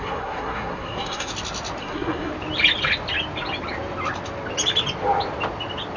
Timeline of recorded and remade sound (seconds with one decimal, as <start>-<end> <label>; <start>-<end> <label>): 0.0-1.3 remade; 1.3-1.8 recorded; 1.8-2.3 remade; 2.3-6.0 recorded